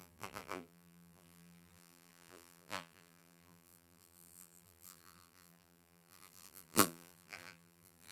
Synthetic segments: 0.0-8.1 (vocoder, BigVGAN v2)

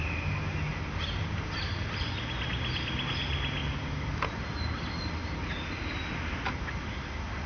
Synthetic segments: none